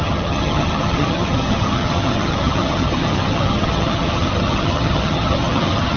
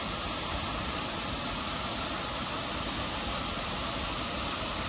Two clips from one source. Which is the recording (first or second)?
second